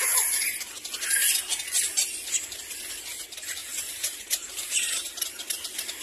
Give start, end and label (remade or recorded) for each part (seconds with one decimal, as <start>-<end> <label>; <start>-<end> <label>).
0.0-3.6 recorded; 3.6-5.0 remade; 5.0-6.0 recorded